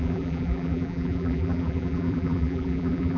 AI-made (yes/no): yes